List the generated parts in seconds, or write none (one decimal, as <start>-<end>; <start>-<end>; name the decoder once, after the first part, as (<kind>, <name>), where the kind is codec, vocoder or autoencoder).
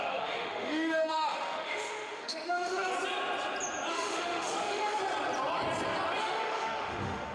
0.0-2.9 (autoencoder, DAC-VAE); 3.9-5.0; 6.2-7.3